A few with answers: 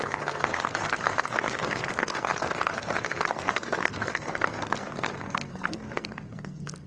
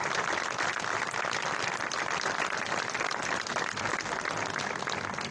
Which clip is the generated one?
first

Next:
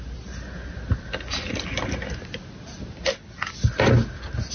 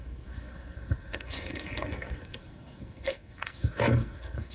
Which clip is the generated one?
second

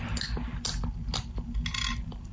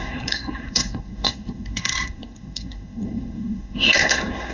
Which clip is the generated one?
second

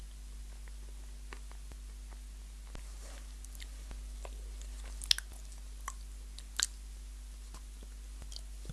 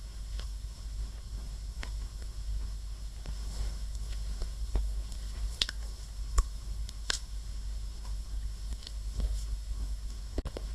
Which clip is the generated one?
second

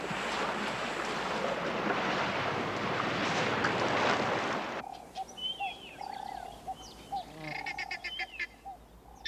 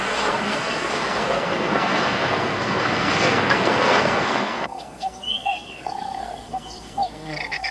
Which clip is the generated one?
second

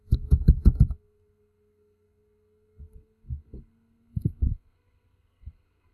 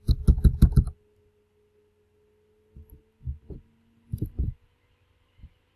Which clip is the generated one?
first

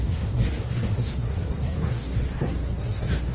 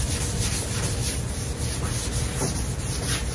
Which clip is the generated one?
first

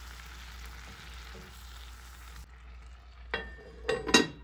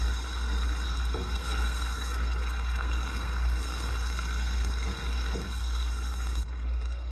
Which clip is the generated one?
second